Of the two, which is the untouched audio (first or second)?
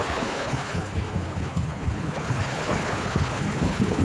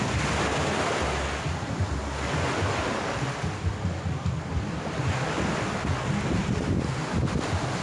second